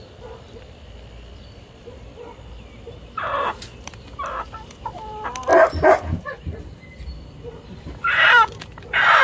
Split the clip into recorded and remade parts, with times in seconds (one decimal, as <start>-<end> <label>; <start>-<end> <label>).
0.0-5.5 recorded; 5.5-7.8 remade; 7.8-9.2 recorded